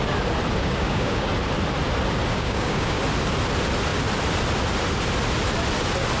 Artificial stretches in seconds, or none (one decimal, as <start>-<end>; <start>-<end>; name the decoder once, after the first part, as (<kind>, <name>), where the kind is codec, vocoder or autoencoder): 0.6-1.3 (codec, DAC); 2.3-3.0